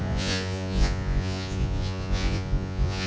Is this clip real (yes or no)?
no